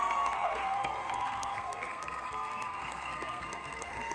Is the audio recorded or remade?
remade